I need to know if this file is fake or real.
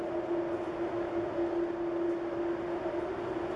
real